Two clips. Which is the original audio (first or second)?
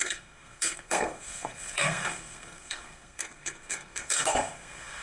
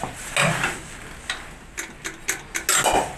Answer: second